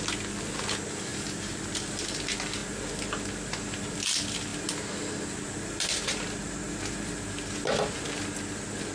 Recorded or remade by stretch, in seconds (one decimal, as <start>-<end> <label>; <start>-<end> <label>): 0.0-1.1 recorded; 1.1-1.6 remade; 1.6-8.9 recorded